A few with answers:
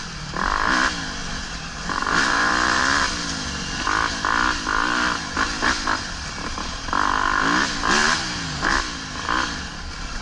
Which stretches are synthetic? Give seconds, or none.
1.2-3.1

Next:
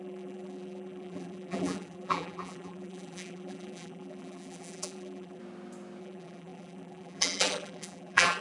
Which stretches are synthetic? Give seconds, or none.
0.0-5.4; 6.0-8.4

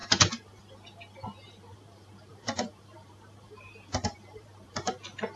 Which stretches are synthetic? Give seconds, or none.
0.0-0.6; 1.7-4.9

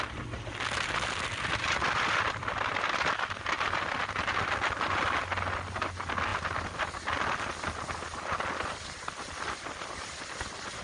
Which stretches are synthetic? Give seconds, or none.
1.6-4.0

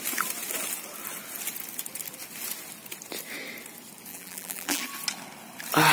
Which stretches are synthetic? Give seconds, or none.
4.1-4.8